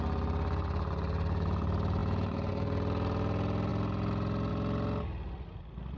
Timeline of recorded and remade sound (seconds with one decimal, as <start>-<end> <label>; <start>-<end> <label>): 0.0-6.0 recorded